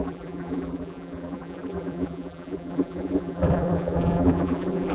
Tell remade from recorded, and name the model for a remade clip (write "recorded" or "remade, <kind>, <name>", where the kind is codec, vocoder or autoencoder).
remade, vocoder, BigVGAN v2